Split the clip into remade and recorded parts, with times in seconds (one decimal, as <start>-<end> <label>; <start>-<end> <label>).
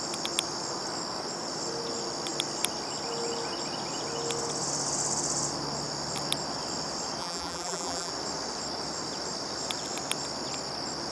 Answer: 0.0-7.2 recorded; 7.2-8.1 remade; 8.1-11.1 recorded